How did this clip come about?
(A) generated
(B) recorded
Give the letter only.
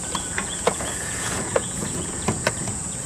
A